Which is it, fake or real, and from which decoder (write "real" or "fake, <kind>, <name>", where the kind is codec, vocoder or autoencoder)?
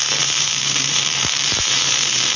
fake, vocoder, BigVGAN v2